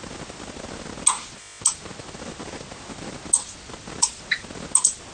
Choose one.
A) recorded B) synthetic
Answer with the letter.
A